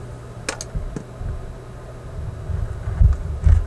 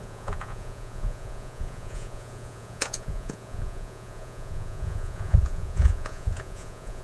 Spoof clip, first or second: second